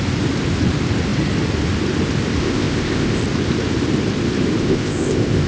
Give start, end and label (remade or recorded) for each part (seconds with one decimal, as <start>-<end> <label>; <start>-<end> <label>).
0.0-2.4 recorded; 2.4-3.2 remade; 3.2-4.6 recorded; 4.6-5.5 remade